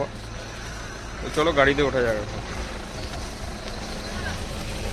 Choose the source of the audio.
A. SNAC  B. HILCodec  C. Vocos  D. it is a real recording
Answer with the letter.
D